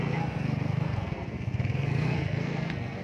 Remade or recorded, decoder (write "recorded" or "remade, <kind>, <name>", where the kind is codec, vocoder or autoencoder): remade, codec, SNAC